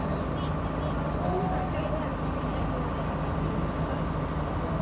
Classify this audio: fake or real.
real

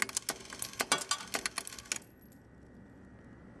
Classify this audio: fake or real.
real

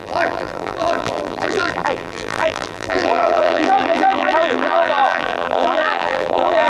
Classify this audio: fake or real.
fake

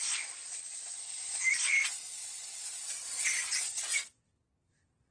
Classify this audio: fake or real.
real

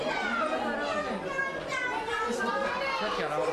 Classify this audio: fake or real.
real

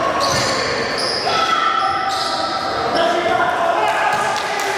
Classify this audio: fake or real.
real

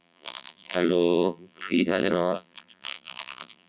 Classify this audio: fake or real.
fake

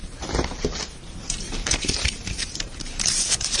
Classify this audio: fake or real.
fake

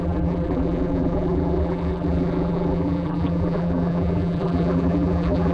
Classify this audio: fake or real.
fake